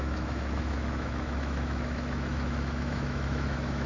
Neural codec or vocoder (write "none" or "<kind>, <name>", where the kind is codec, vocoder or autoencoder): autoencoder, DAC-VAE